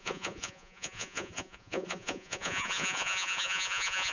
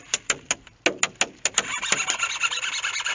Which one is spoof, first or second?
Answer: first